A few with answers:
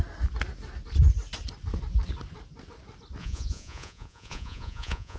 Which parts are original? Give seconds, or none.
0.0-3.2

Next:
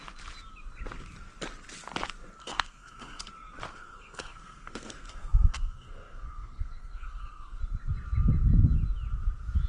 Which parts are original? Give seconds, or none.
0.0-2.4; 3.3-3.7; 7.6-9.7

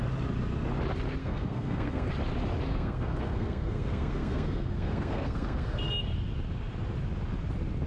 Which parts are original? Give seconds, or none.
0.0-1.2; 2.1-2.7; 5.9-7.9